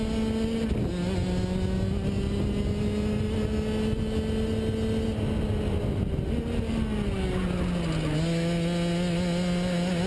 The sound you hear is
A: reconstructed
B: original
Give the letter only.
B